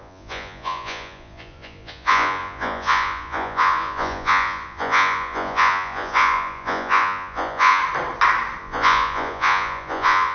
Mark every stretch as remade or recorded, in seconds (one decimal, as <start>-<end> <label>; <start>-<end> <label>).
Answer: 0.0-7.8 remade; 7.8-8.6 recorded; 8.6-10.3 remade